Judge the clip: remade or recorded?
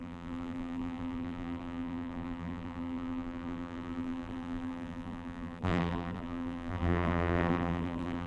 remade